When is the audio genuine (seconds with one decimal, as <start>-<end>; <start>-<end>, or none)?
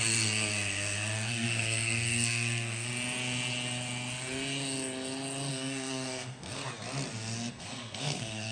2.9-5.5; 6.6-7.5